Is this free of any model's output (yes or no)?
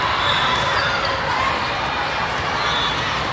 yes